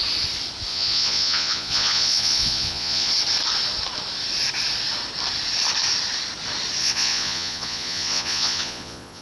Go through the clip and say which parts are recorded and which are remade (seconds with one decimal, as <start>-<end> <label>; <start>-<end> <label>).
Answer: 0.0-0.7 recorded; 0.7-3.1 remade; 3.1-6.8 recorded; 6.8-9.2 remade